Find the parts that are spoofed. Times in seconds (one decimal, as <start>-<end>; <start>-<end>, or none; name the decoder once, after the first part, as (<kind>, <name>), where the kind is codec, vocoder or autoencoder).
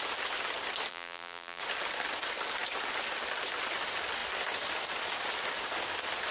0.9-1.6 (vocoder, BigVGAN v2)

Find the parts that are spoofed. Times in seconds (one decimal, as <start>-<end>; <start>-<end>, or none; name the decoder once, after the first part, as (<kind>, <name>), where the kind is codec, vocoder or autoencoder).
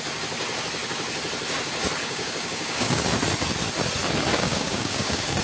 2.0-3.0 (codec, DAC); 4.3-5.4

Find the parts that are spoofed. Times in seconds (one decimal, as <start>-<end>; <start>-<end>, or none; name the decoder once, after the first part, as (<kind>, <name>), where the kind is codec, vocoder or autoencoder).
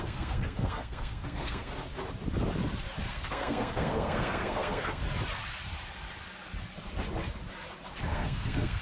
0.0-1.7 (codec, SNAC); 3.1-5.0; 8.1-8.8